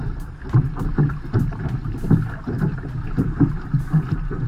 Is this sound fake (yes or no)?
no